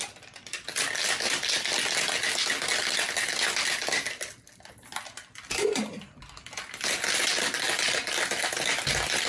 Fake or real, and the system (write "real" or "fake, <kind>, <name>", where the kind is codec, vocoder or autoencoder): real